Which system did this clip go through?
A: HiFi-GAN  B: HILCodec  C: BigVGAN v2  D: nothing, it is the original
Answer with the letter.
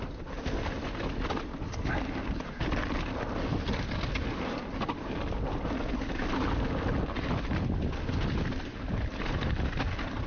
D